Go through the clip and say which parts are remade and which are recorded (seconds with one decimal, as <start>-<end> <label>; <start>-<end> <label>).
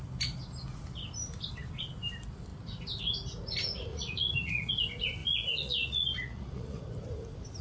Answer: 0.0-3.9 recorded; 3.9-4.7 remade; 4.7-5.2 recorded; 5.2-6.8 remade; 6.8-7.6 recorded